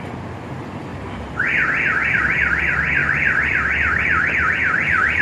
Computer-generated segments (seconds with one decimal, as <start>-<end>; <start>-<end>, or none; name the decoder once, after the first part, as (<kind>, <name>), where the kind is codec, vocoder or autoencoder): 3.0-4.5 (vocoder, BigVGAN v2)